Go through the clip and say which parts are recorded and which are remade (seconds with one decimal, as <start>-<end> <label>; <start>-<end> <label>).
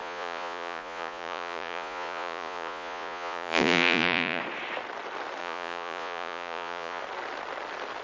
0.0-4.4 remade; 4.4-5.4 recorded; 5.4-7.0 remade; 7.0-8.0 recorded